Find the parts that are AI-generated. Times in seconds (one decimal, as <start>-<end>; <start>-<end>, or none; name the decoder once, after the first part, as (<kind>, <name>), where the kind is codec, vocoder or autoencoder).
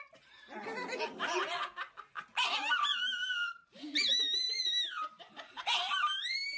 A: none